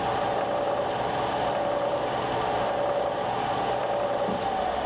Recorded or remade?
recorded